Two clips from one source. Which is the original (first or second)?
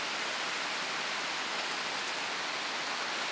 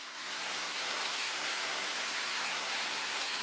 first